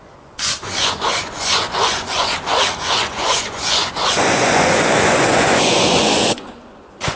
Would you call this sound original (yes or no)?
no